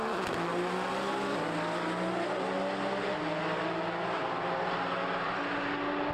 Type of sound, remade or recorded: recorded